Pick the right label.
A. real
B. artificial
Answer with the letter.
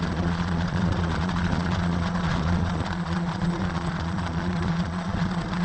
B